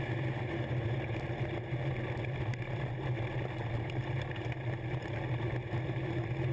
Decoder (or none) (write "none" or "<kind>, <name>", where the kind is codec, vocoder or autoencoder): none